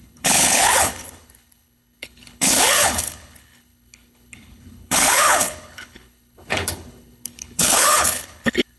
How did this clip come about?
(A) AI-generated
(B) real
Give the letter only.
A